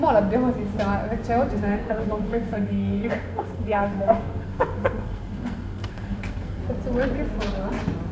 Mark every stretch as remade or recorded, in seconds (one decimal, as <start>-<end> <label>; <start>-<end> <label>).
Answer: 0.0-1.7 recorded; 1.7-6.6 remade; 6.6-8.1 recorded